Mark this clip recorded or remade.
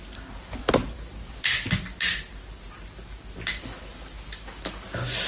recorded